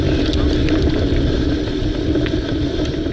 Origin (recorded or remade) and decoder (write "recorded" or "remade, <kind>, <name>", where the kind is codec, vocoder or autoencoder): recorded